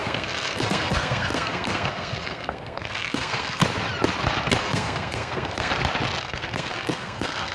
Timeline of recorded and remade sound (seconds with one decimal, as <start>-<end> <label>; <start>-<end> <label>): 0.0-3.6 remade; 3.6-4.6 recorded; 4.6-5.7 remade; 5.7-6.2 recorded; 6.2-7.5 remade